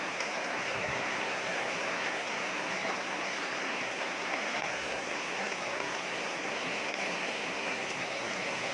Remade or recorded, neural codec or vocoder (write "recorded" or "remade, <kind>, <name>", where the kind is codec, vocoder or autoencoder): remade, codec, SNAC